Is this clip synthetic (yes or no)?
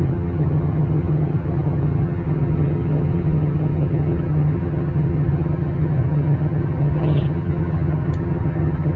yes